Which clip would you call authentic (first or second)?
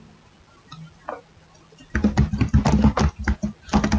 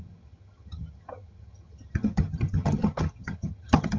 first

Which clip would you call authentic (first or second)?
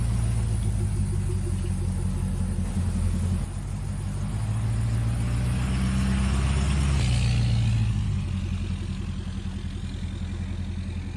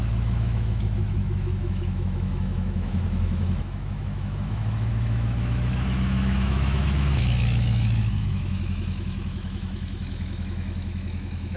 first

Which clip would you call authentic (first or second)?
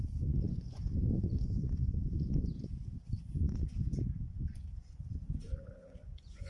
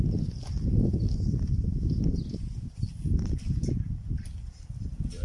second